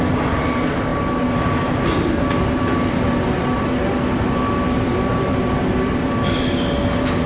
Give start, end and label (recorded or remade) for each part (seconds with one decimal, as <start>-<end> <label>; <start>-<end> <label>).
0.0-7.3 recorded